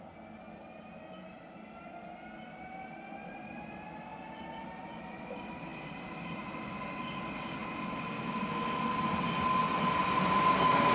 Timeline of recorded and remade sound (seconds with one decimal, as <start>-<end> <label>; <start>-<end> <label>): 0.0-10.9 recorded